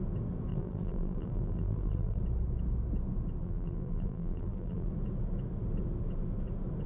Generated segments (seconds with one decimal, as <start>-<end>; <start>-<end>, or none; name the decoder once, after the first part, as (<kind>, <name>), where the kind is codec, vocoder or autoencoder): 0.5-2.2 (vocoder, BigVGAN v2); 3.4-4.9